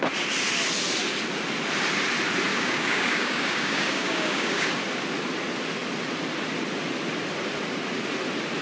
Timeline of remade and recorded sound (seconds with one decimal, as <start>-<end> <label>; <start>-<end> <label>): 0.0-2.5 recorded; 2.5-4.7 remade; 4.7-8.6 recorded